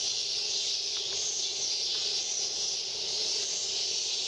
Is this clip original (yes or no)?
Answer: yes